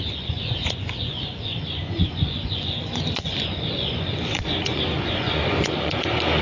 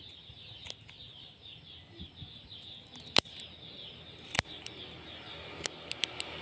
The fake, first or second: first